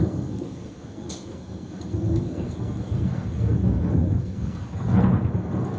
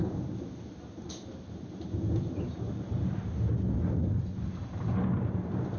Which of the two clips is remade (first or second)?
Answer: first